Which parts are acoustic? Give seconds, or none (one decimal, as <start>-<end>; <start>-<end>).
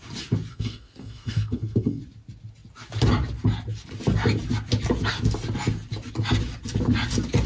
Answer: 0.0-0.5; 2.0-7.5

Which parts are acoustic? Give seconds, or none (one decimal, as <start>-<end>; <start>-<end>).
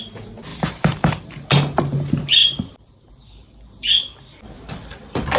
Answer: 0.0-0.5; 1.3-2.4; 3.1-5.4